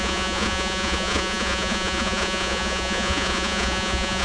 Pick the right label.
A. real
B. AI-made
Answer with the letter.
B